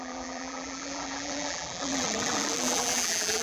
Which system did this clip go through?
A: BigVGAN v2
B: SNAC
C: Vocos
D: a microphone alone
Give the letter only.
A